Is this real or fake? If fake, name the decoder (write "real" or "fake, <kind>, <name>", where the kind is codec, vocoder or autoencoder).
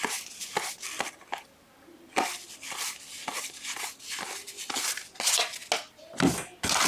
real